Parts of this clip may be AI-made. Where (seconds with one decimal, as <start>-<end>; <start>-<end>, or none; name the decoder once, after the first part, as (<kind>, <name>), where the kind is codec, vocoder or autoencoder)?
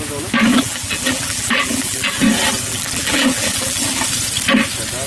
0.5-2.1 (vocoder, BigVGAN v2); 2.7-4.0